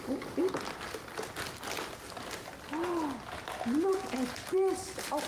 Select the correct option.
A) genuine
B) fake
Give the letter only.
A